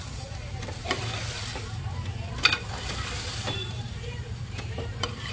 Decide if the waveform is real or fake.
fake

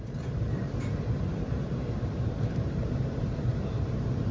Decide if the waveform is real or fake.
fake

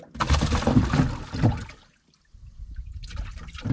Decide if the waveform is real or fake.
real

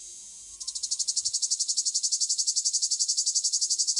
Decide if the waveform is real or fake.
real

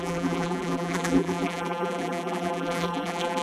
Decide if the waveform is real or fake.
fake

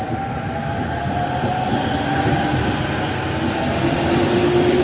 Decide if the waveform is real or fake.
real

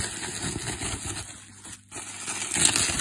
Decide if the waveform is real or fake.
real